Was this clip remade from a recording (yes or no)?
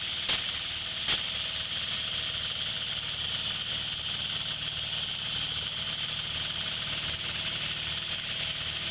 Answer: no